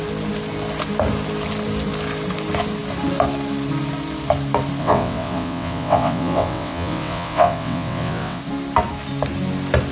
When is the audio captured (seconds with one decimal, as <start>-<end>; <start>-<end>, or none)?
0.0-4.8; 8.4-9.9